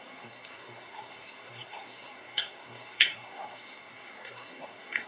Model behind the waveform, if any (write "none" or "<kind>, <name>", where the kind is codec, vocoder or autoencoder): codec, SNAC